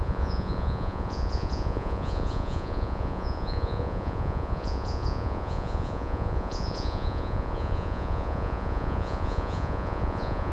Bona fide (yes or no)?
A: no